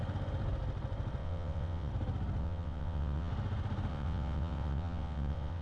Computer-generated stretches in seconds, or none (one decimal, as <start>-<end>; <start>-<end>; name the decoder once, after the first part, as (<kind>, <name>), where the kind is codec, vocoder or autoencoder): 1.2-1.9 (vocoder, WaveNeXt); 2.4-3.3; 3.9-5.6